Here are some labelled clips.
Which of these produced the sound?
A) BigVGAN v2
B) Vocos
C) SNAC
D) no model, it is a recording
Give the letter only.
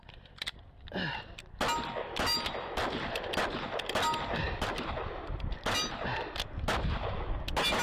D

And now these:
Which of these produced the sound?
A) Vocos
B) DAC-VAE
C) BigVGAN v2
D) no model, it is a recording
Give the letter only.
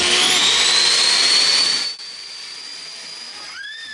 C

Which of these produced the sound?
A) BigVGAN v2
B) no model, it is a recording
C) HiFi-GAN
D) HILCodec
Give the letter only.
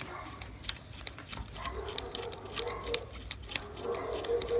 A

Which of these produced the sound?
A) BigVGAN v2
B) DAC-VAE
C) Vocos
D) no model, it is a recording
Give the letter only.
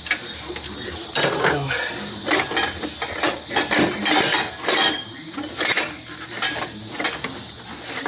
D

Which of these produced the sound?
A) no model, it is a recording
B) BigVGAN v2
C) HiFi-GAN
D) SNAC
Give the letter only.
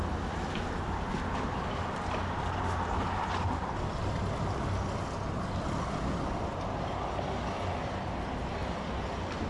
A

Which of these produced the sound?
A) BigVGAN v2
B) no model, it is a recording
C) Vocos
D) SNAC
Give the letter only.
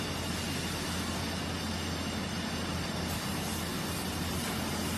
B